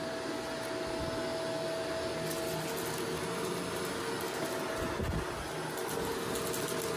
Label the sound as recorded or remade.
recorded